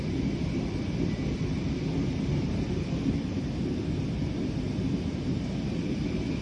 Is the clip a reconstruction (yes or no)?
no